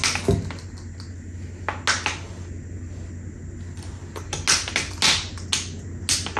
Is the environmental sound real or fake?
real